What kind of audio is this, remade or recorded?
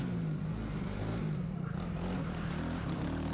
recorded